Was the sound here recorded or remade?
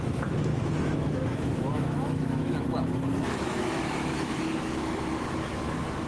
remade